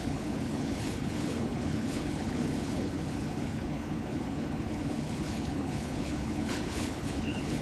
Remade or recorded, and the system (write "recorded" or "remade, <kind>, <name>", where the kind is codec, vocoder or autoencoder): remade, codec, HILCodec